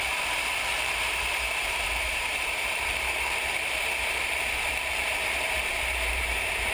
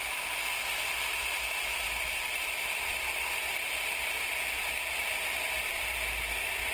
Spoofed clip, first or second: first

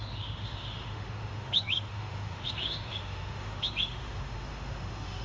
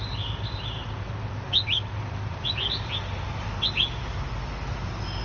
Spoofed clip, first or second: first